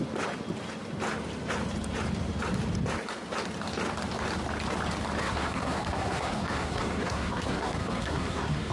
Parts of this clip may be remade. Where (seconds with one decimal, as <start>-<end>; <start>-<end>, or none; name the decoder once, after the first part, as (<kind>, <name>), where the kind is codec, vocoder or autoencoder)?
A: 5.2-8.7 (codec, SNAC)